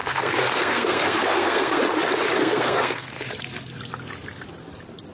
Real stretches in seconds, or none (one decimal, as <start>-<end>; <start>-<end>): 1.8-2.4; 3.3-5.1